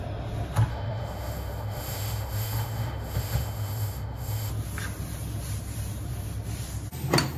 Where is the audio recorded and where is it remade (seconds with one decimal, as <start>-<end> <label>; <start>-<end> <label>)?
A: 0.0-0.7 recorded; 0.7-4.5 remade; 4.5-7.4 recorded